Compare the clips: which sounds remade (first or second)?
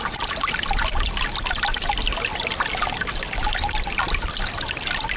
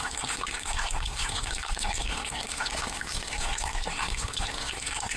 second